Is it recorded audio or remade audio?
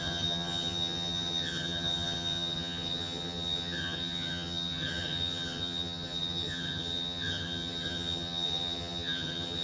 remade